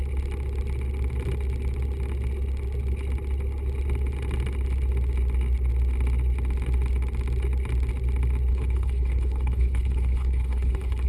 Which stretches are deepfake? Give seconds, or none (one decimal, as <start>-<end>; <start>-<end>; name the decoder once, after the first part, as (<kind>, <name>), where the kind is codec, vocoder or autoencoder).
8.5-11.1 (codec, HILCodec)